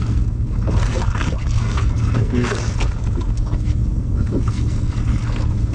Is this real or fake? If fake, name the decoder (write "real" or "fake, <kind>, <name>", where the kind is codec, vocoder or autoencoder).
fake, codec, SNAC